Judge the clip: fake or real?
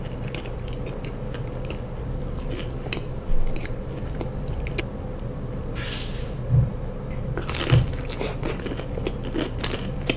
real